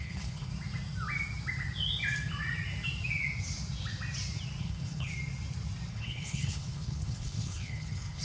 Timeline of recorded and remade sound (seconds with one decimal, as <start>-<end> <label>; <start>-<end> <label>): 0.0-0.5 remade; 0.5-4.6 recorded; 4.6-5.1 remade; 5.1-5.9 recorded; 5.9-8.2 remade